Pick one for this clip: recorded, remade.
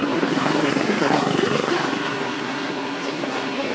remade